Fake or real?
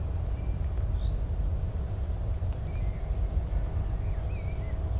real